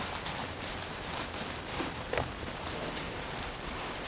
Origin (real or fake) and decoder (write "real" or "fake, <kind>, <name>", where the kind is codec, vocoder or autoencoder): fake, vocoder, BigVGAN v2